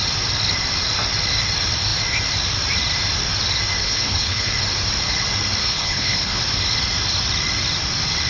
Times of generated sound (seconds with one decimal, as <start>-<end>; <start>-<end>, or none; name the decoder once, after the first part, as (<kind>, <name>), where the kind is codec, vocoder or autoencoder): 3.8-4.5 (codec, HILCodec); 5.6-6.4